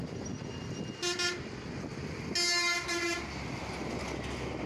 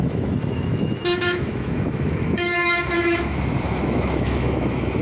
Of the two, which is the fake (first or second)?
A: second